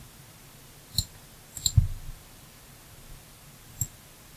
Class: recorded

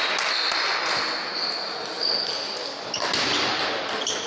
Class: recorded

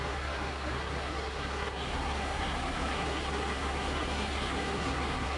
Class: remade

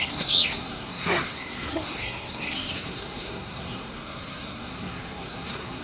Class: remade